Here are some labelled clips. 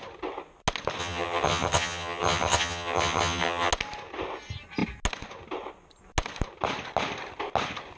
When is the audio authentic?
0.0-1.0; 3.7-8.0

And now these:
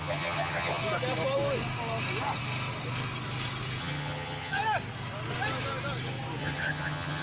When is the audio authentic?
0.8-3.8; 4.6-6.4

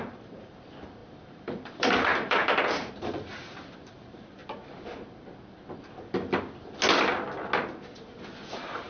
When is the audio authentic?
4.4-8.5

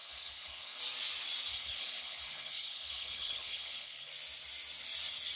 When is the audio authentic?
0.8-1.5; 4.1-5.4

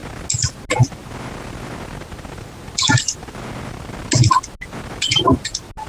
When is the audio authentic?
0.0-5.9